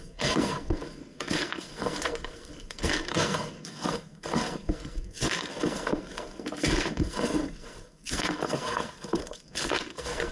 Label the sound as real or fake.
fake